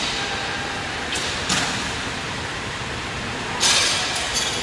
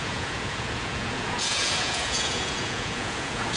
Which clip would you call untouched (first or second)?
first